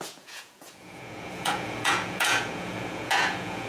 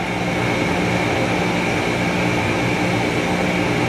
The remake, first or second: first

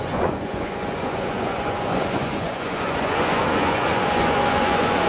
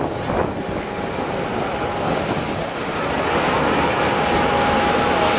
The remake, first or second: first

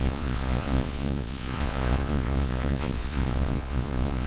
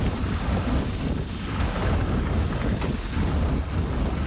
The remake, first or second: first